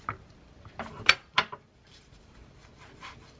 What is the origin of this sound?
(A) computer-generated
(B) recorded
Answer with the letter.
B